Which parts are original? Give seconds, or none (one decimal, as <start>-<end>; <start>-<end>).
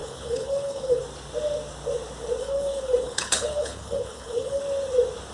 1.0-2.4; 4.6-5.3